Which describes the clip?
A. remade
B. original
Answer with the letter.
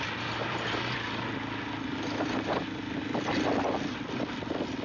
B